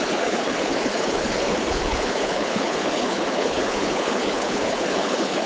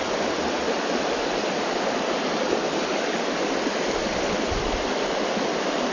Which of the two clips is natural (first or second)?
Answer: second